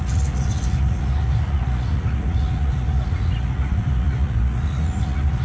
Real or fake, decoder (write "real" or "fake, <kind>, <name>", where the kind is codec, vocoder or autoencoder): fake, vocoder, Vocos